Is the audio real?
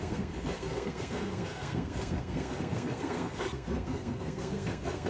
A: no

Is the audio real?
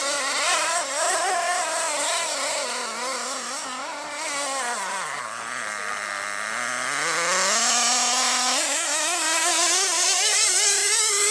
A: yes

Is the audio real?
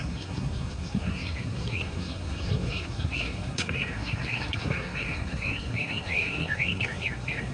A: no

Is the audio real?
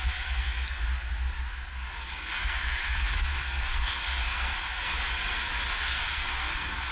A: no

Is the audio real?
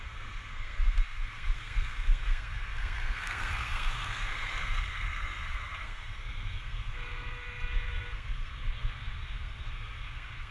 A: no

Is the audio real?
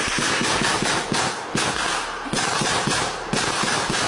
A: yes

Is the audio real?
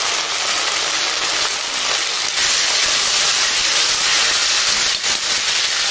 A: yes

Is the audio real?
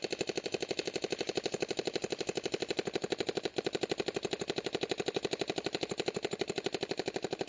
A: yes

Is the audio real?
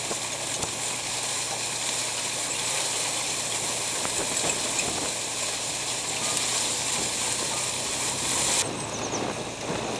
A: yes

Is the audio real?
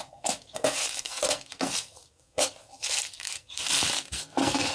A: no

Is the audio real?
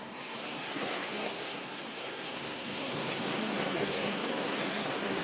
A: no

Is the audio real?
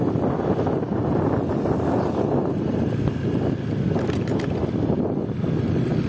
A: yes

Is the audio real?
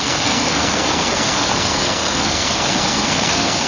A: no